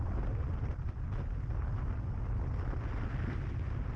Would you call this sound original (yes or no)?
yes